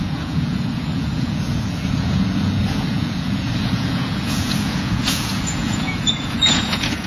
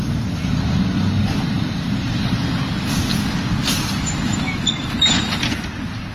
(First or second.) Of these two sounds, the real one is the second